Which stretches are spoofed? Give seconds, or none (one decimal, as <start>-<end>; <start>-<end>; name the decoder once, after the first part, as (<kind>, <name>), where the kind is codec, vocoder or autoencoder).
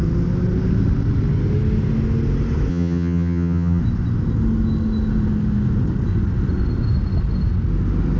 2.7-3.8 (vocoder, HiFi-GAN)